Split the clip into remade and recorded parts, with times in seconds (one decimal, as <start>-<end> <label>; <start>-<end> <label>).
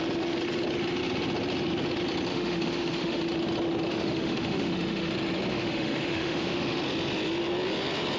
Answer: 0.0-2.3 recorded; 2.3-3.2 remade; 3.2-3.9 recorded; 3.9-5.1 remade; 5.1-5.5 recorded; 5.5-6.8 remade; 6.8-8.2 recorded